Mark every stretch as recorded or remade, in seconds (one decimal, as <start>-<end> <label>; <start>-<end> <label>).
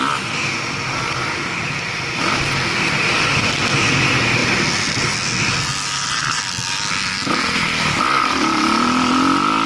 0.0-9.7 recorded